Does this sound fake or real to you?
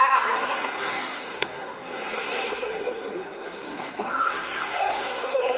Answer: fake